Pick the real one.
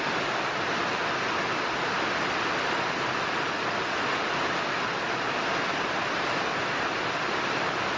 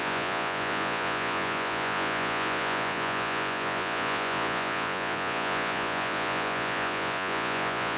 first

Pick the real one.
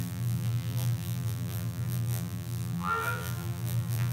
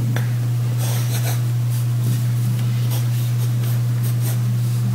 second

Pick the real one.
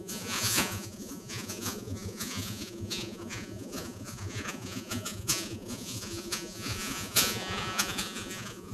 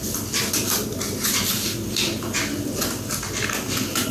second